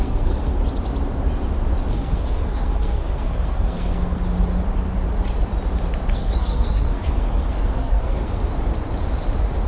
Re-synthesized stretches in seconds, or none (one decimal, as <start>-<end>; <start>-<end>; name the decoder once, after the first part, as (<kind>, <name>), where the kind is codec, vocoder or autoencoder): 0.0-0.6 (codec, SNAC); 1.9-4.2; 6.1-8.4